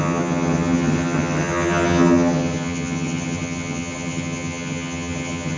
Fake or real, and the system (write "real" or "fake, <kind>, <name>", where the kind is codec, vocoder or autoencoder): fake, vocoder, HiFi-GAN